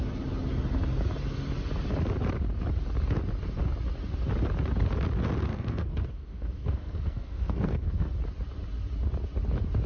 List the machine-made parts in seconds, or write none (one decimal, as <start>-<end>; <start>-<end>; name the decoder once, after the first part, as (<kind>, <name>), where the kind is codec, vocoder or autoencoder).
5.5-8.1 (codec, SNAC)